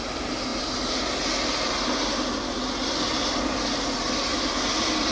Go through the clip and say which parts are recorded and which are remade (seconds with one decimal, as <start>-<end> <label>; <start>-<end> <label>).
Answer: 0.0-5.1 recorded